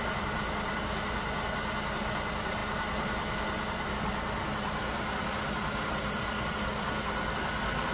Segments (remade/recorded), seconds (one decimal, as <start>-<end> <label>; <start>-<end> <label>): 0.0-7.9 recorded